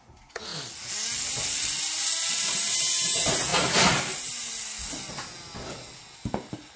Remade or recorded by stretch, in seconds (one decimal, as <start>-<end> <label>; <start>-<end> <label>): 0.0-6.8 recorded